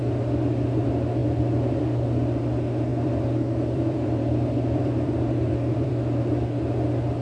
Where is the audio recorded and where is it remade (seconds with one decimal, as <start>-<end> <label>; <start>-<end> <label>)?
0.0-1.2 recorded; 1.2-1.8 remade; 1.8-2.9 recorded; 2.9-5.9 remade; 5.9-7.2 recorded